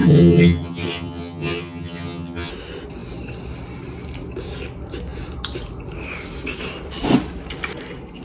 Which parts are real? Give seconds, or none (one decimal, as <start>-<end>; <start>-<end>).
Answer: 2.5-8.2